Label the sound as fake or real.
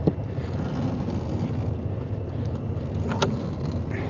real